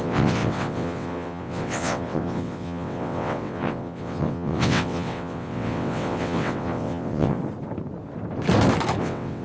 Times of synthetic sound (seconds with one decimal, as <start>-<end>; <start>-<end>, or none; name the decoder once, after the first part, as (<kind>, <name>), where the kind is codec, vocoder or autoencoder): 0.0-7.4 (vocoder, WaveNeXt); 9.0-9.4

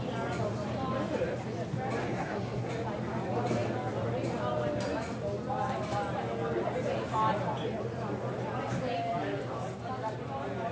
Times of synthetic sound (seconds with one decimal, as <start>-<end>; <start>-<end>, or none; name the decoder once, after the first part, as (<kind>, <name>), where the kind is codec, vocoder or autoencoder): 2.0-2.7 (codec, SNAC)

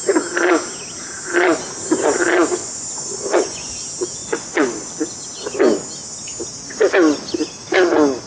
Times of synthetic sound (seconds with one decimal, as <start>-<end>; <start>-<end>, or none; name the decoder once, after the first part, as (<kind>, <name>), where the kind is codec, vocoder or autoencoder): 2.6-3.8 (vocoder, Vocos); 4.2-4.9

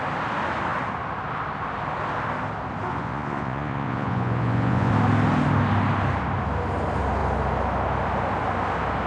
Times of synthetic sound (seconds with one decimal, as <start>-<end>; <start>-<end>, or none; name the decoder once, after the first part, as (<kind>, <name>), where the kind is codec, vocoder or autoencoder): 2.9-4.9 (vocoder, Vocos)

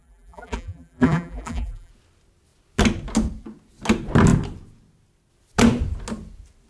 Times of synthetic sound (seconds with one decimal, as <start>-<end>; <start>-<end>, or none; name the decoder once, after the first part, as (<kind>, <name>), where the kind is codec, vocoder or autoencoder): 0.0-1.9 (vocoder, BigVGAN v2)